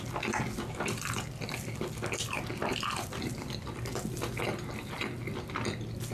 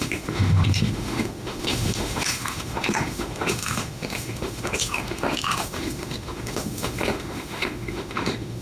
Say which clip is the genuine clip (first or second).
first